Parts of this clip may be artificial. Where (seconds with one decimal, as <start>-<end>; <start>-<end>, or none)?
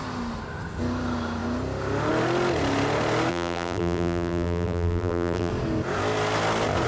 3.3-5.5